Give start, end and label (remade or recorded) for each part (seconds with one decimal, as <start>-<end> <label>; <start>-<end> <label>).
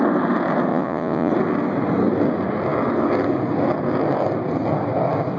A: 0.0-0.7 recorded; 0.7-1.3 remade; 1.3-5.4 recorded